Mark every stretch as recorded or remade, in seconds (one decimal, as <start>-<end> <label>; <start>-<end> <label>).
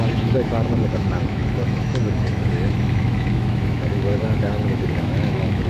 0.0-5.7 remade